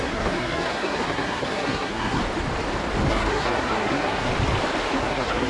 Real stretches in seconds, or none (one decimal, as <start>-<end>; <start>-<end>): 2.2-3.1; 4.3-5.0